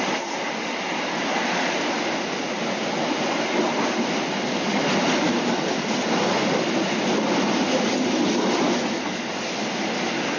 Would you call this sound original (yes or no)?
yes